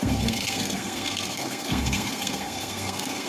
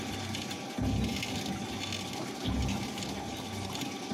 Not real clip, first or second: first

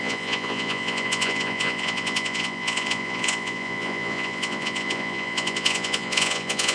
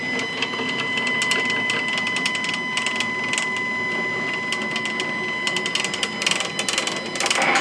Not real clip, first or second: first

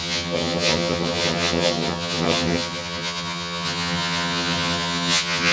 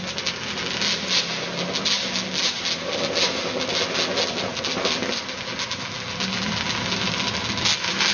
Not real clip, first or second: first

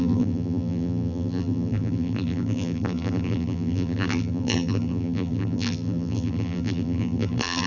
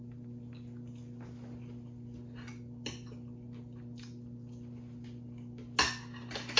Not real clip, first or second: first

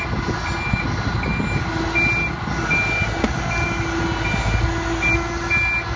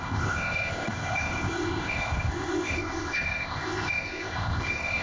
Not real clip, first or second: second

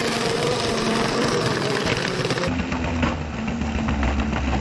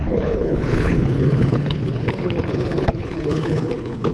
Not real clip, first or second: second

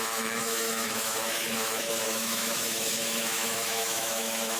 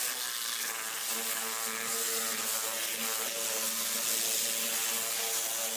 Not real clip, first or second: first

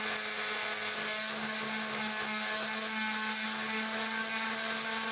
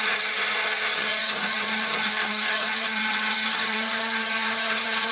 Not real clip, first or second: second